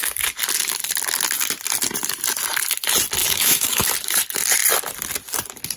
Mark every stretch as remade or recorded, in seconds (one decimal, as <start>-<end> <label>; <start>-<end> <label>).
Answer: 0.0-3.2 recorded; 3.2-3.9 remade; 3.9-5.8 recorded